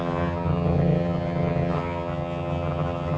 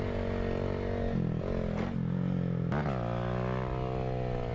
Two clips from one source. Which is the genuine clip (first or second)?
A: second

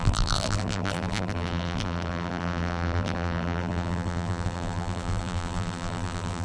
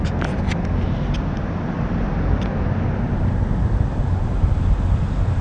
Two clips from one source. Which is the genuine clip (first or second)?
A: second